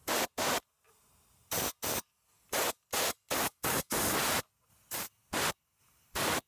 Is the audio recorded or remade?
recorded